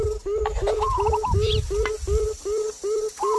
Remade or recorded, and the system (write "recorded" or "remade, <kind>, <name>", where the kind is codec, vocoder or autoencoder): recorded